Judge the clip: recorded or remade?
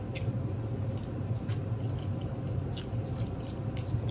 recorded